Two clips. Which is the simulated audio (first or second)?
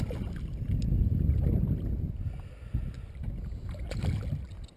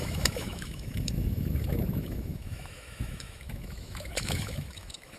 second